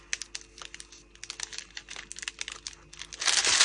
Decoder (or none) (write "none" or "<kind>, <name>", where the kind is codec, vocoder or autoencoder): none